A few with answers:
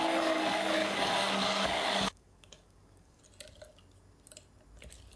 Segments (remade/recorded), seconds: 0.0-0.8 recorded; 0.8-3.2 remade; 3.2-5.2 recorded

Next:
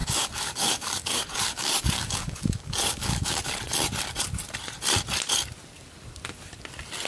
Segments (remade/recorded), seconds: 0.0-3.4 remade; 3.4-7.1 recorded

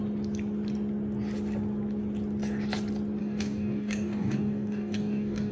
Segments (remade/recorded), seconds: 0.0-3.2 recorded; 3.2-5.5 remade